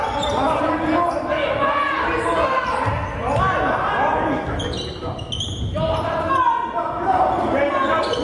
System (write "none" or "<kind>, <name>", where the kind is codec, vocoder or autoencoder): none